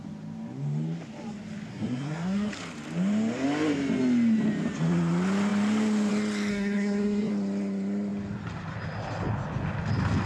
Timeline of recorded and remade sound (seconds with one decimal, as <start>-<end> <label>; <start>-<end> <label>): 0.0-1.7 recorded; 1.7-2.5 remade; 2.5-6.5 recorded; 6.5-7.3 remade; 7.3-10.3 recorded

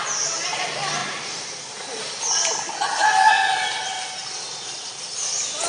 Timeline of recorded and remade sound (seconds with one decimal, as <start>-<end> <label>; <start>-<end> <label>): 0.0-1.0 recorded; 1.0-2.2 remade; 2.2-5.7 recorded

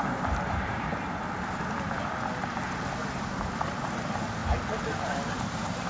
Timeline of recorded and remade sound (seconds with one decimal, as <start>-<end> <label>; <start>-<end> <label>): 0.0-0.9 remade; 0.9-3.0 recorded; 3.0-4.4 remade; 4.4-5.0 recorded; 5.0-5.9 remade

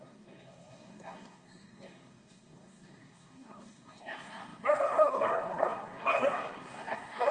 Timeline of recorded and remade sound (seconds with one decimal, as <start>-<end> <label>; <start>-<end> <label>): 0.0-7.3 remade